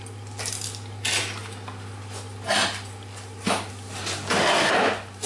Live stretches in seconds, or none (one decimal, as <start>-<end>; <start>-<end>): 0.0-5.3